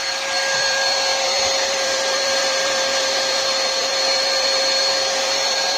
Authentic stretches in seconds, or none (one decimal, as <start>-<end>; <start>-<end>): none